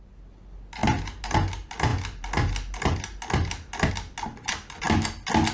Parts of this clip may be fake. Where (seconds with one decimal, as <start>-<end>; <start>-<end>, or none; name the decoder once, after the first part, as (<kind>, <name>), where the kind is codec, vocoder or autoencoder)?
none